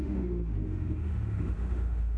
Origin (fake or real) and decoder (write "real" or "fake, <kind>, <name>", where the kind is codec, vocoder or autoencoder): fake, autoencoder, DAC-VAE